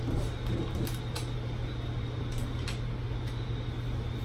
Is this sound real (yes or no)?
yes